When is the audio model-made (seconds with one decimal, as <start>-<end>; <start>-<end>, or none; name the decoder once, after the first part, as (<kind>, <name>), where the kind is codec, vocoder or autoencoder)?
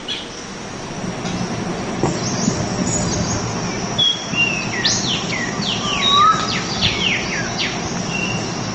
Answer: none